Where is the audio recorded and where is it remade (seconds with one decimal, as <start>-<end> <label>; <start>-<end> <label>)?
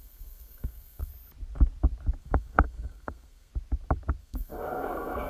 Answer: 0.0-1.1 remade; 1.1-2.2 recorded; 2.2-3.5 remade; 3.5-4.2 recorded; 4.2-5.3 remade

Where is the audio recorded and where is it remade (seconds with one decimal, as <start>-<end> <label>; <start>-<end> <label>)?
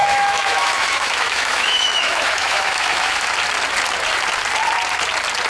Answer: 0.0-3.3 remade; 3.3-5.5 recorded